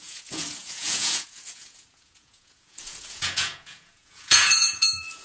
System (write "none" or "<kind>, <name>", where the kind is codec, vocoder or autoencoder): vocoder, Vocos